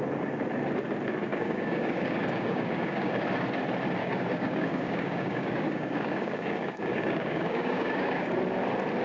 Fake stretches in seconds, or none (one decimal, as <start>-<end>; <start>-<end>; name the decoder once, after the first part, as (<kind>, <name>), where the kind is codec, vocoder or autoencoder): 1.3-3.2 (codec, DAC); 4.0-8.3